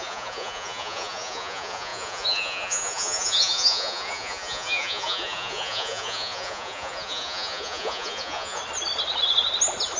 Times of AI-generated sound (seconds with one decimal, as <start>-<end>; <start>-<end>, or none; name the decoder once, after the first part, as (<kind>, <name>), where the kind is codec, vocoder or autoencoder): 0.0-8.6 (vocoder, Vocos)